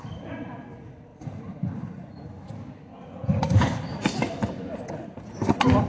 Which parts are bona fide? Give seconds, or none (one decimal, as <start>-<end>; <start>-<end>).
0.0-5.9